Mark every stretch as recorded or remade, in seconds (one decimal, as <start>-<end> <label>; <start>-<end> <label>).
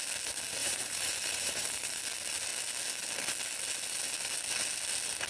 0.0-0.6 recorded; 0.6-2.0 remade; 2.0-5.3 recorded